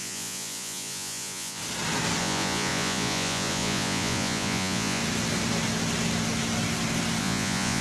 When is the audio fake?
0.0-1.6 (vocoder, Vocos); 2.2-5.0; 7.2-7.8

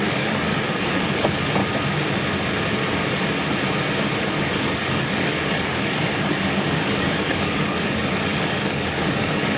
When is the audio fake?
0.0-1.6 (codec, DAC); 4.2-9.6

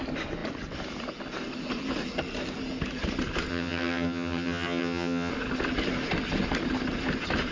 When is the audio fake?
3.5-5.3 (vocoder, HiFi-GAN)

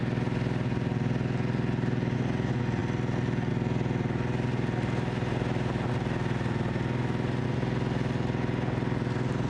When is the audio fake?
none

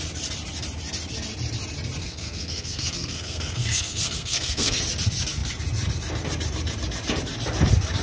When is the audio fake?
2.0-4.8 (codec, SNAC)